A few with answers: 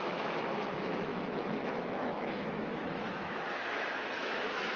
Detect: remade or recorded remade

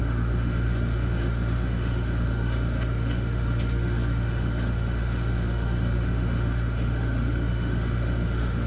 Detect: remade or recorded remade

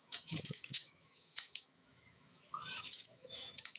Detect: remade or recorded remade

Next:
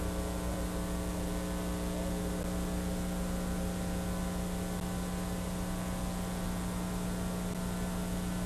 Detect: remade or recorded recorded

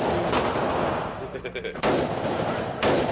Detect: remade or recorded recorded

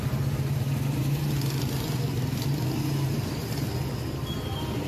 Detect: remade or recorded recorded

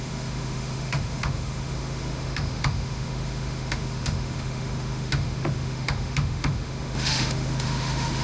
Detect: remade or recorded remade